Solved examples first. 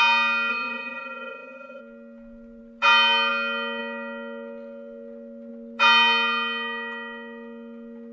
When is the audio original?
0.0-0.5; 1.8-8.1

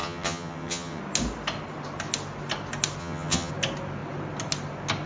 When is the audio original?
1.0-3.0; 3.5-5.1

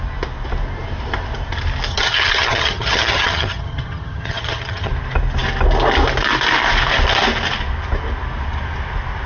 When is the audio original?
0.0-1.9; 4.9-9.3

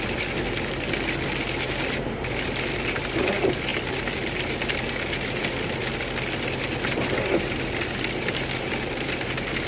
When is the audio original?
0.0-9.7